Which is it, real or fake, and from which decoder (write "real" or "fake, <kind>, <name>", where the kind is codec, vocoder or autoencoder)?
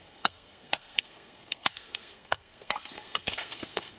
fake, codec, SNAC